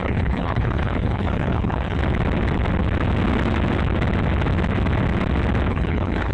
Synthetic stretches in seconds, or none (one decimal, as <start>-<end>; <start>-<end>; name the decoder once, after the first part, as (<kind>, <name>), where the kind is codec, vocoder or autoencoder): 0.0-2.0 (codec, HILCodec); 5.7-6.3